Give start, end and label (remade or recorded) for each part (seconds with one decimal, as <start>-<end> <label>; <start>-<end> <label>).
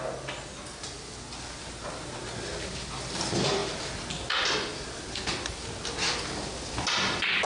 0.0-7.4 recorded